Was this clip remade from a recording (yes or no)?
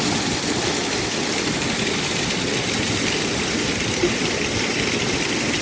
no